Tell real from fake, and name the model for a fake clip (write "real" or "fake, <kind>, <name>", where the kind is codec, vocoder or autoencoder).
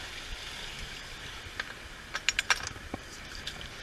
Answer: real